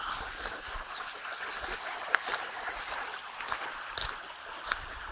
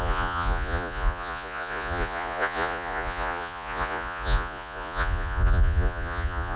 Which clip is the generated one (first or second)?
second